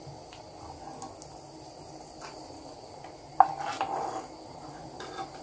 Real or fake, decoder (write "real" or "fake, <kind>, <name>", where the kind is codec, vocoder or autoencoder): real